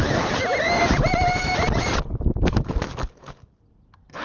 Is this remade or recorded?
recorded